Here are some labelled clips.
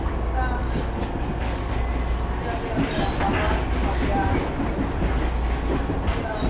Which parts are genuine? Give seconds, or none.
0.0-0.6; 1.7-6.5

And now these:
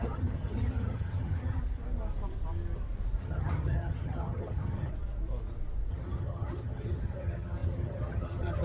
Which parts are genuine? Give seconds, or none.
1.6-3.2; 4.9-5.9

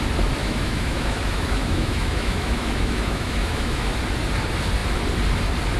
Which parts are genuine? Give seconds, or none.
0.0-0.4; 3.9-5.8

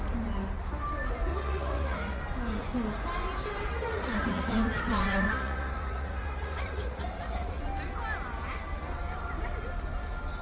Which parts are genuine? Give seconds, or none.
0.0-1.3; 2.2-3.7; 7.6-10.4